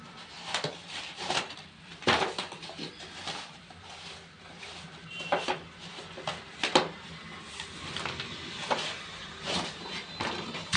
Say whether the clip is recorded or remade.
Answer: remade